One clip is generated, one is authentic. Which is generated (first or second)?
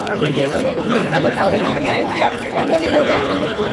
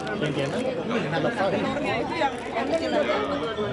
first